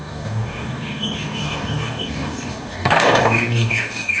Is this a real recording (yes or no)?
no